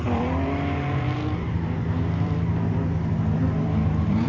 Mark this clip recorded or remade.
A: remade